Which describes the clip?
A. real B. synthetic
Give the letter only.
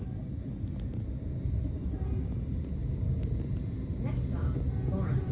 A